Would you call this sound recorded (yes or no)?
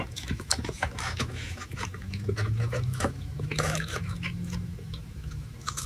no